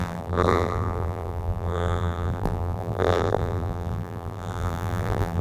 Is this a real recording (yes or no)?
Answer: no